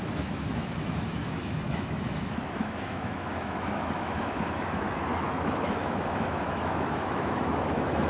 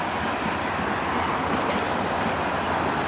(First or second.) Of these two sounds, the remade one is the first